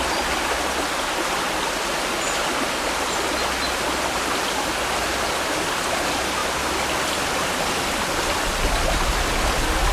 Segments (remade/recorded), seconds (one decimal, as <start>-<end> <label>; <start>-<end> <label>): 0.0-9.9 recorded